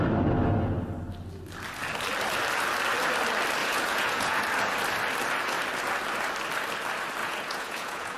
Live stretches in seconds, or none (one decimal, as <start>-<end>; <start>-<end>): 0.0-3.6; 4.4-7.2